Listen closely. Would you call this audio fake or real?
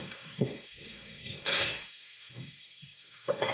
fake